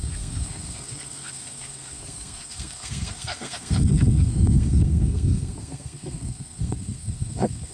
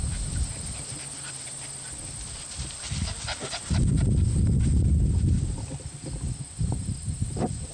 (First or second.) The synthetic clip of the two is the first